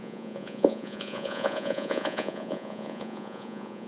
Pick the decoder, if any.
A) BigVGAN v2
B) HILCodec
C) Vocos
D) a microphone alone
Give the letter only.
C